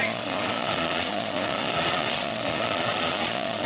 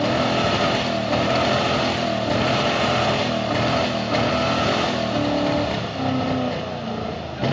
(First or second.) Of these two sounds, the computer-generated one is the first